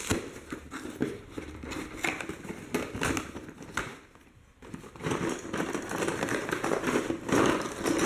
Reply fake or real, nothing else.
real